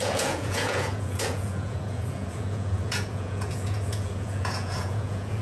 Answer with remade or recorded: remade